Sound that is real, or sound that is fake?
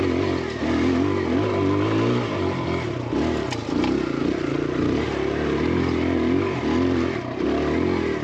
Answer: real